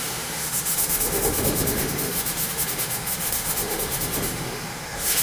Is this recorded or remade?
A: remade